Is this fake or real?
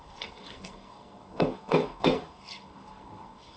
fake